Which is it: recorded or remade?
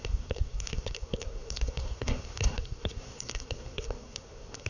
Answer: remade